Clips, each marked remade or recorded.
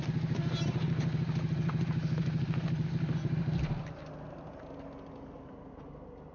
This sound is recorded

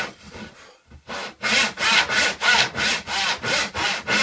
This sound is recorded